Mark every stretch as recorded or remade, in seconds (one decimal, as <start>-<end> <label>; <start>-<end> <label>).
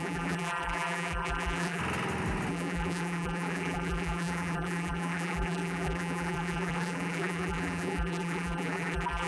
0.0-1.8 remade; 1.8-2.5 recorded; 2.5-9.3 remade